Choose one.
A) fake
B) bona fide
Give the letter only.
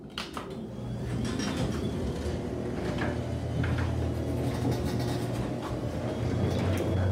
B